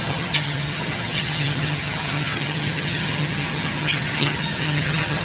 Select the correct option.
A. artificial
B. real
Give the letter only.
A